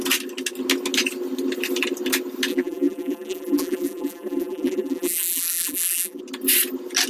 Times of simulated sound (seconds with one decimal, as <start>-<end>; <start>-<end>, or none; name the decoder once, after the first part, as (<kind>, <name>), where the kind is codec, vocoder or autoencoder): 2.5-6.2 (vocoder, BigVGAN v2)